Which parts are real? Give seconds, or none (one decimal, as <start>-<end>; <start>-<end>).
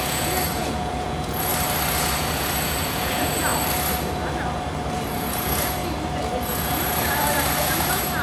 1.5-2.0; 3.5-5.1; 5.8-6.4